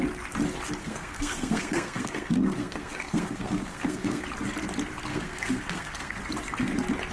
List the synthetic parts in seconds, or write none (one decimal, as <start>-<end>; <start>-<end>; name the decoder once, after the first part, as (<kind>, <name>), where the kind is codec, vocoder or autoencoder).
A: 0.8-4.2 (codec, SNAC); 5.1-6.2